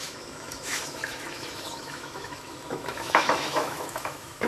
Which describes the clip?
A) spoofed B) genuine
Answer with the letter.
A